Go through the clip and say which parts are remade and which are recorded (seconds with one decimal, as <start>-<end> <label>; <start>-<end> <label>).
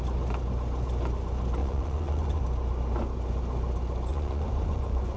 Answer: 0.0-1.6 recorded; 1.6-2.4 remade; 2.4-4.1 recorded; 4.1-5.2 remade